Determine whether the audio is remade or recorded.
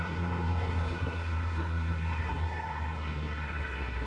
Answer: remade